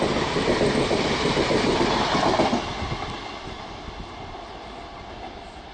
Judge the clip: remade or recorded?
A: recorded